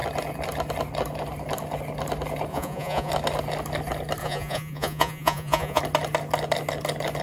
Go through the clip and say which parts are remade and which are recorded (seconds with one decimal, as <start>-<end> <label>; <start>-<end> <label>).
0.0-2.5 recorded; 2.5-3.1 remade; 3.1-4.2 recorded; 4.2-5.8 remade; 5.8-7.2 recorded